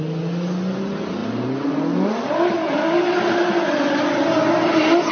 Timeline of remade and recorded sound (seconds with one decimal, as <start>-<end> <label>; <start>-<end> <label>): 0.0-5.1 recorded